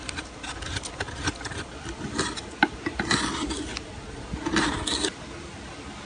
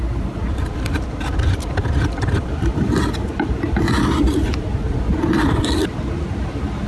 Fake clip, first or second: second